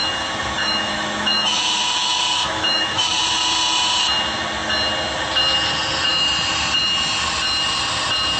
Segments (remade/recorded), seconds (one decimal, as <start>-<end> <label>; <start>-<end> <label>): 0.0-3.2 remade; 3.2-8.4 recorded